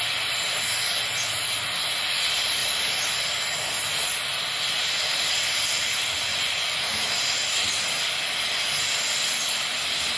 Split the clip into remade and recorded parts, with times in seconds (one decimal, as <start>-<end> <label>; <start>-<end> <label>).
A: 0.0-6.3 recorded; 6.3-6.8 remade; 6.8-10.2 recorded